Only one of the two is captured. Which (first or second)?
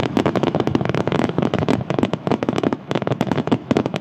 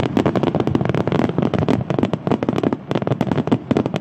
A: second